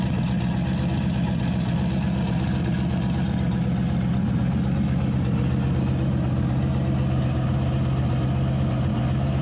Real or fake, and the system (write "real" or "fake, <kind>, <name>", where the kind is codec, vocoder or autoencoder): real